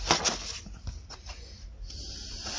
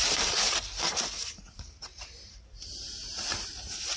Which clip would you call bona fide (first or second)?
first